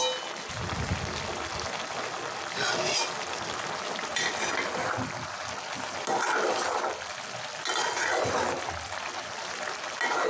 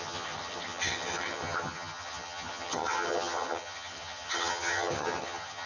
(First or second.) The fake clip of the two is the second